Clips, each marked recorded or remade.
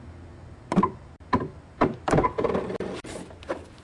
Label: recorded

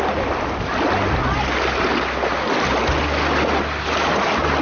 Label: recorded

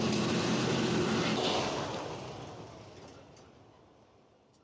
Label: recorded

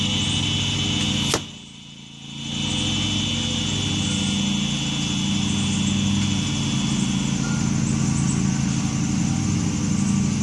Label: recorded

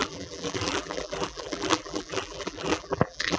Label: remade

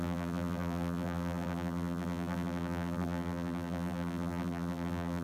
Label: remade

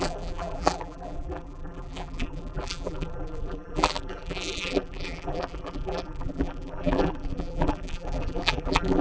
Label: remade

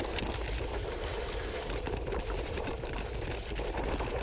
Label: remade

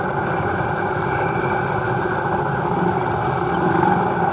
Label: recorded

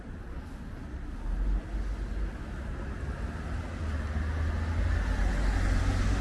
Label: recorded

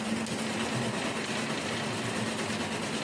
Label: recorded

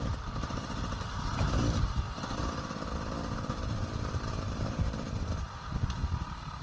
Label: remade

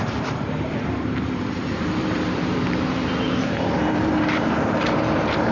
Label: remade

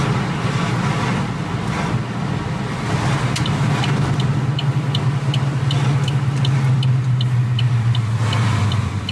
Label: recorded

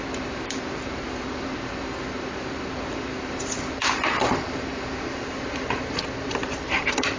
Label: remade